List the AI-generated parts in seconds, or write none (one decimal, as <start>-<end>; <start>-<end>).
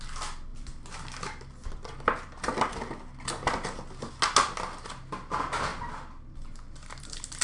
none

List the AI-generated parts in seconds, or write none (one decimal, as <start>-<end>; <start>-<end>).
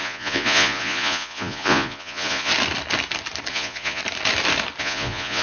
0.0-2.5; 3.5-4.0; 4.8-5.4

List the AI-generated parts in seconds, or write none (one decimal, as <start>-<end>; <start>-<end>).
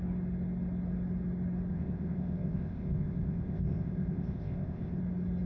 1.7-5.0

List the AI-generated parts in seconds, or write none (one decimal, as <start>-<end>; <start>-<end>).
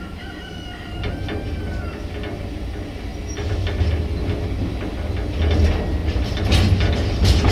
none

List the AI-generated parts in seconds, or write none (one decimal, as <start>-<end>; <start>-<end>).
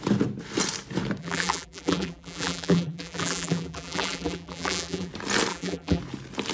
1.2-5.1; 5.5-6.0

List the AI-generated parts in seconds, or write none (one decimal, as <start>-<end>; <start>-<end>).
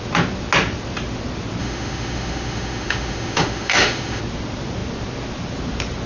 1.6-4.2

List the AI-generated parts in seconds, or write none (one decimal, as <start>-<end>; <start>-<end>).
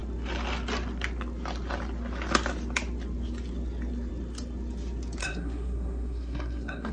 5.2-6.9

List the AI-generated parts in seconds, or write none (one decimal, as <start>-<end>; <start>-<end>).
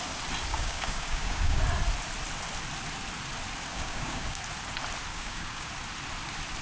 0.5-1.6; 3.7-4.4; 5.1-5.7